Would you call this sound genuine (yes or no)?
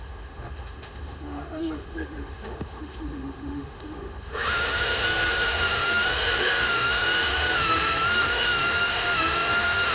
no